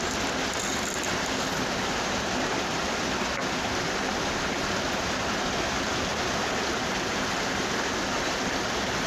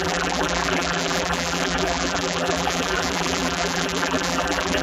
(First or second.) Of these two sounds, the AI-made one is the second